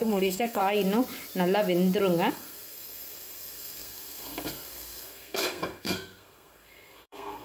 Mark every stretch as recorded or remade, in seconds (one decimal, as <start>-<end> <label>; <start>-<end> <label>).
0.0-0.6 remade; 0.6-2.3 recorded; 2.3-7.4 remade